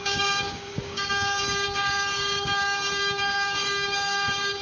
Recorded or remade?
remade